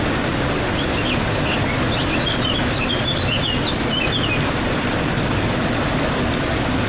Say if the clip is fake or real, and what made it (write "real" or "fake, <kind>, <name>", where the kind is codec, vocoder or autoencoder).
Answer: real